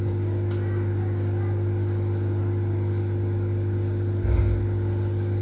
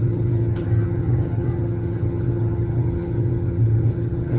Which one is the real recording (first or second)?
first